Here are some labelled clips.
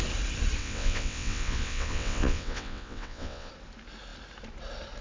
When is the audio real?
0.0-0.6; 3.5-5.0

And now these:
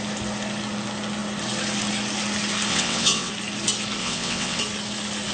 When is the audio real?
0.0-2.7; 3.3-4.0; 4.6-5.3